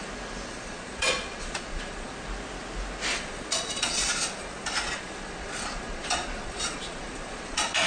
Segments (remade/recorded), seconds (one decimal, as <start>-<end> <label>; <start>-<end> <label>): 0.0-0.5 recorded; 0.5-2.1 remade; 2.1-3.1 recorded; 3.1-7.9 remade